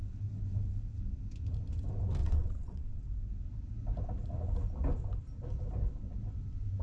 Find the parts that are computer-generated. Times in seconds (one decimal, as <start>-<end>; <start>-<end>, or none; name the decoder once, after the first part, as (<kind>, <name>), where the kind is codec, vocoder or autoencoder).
2.2-3.0 (vocoder, WaveNeXt)